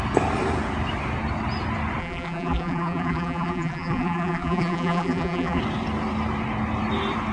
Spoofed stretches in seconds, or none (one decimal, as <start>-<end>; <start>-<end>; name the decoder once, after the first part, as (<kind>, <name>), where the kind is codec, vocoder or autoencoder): 2.0-5.6 (vocoder, BigVGAN v2)